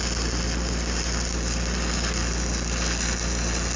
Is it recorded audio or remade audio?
recorded